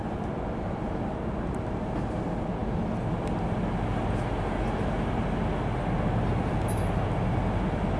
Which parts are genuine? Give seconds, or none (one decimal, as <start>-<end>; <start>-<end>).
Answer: 0.0-8.0

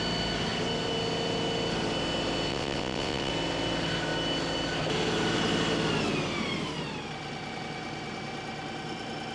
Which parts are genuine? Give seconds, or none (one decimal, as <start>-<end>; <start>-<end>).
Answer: 0.0-2.5; 3.3-9.3